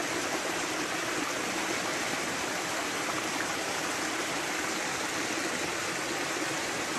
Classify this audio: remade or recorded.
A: recorded